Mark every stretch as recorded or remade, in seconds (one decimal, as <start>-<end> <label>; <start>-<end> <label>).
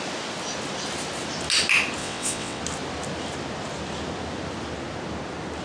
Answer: 0.0-2.0 recorded; 2.0-2.6 remade; 2.6-5.6 recorded